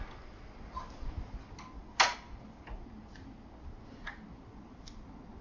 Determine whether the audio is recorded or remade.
recorded